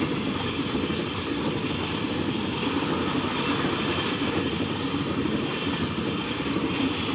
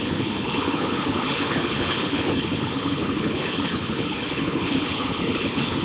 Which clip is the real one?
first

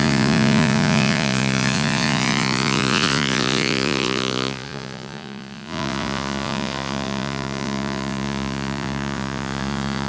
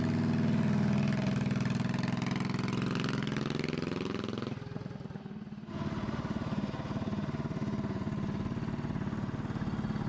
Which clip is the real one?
second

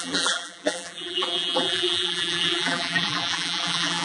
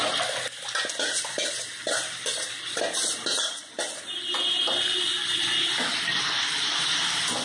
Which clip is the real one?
second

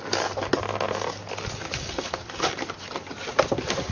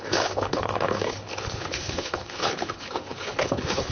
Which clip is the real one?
first